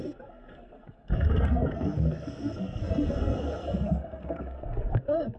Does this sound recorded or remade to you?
remade